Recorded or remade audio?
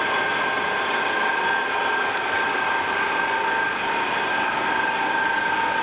recorded